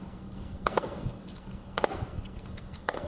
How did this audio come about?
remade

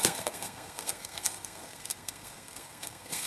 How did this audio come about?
remade